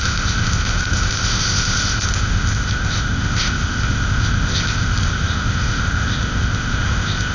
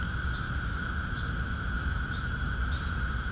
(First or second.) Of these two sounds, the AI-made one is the first